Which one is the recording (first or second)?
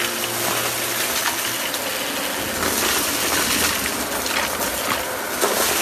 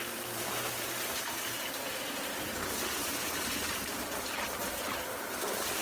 first